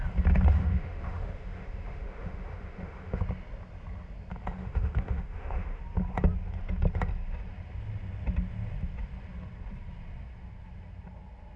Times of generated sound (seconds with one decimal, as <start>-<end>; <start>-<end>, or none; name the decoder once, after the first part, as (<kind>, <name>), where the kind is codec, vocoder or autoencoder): 0.6-3.2 (autoencoder, DAC-VAE); 4.6-5.8